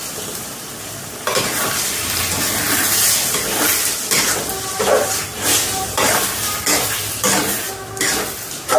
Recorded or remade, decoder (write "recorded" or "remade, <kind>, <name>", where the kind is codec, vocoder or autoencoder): recorded